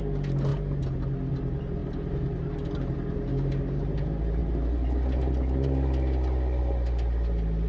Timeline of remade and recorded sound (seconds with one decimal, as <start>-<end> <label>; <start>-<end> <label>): 0.0-3.3 recorded; 3.3-3.8 remade; 3.8-7.7 recorded